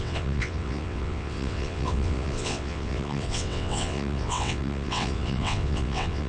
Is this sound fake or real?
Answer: fake